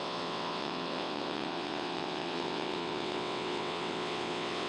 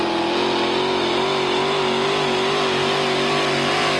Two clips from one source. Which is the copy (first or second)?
first